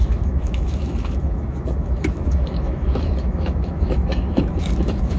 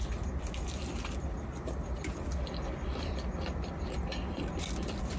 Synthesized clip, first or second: first